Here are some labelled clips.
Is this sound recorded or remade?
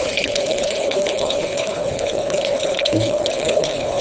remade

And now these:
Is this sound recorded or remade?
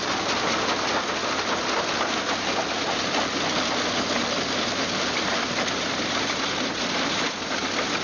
recorded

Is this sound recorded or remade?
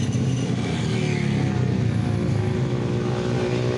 recorded